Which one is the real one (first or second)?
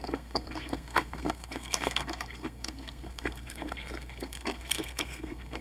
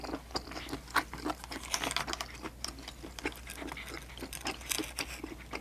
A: second